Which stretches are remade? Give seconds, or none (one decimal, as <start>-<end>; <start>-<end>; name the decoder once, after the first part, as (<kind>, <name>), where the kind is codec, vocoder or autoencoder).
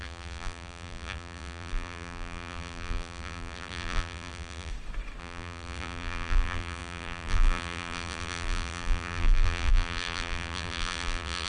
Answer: 0.0-4.7 (vocoder, BigVGAN v2); 5.2-11.5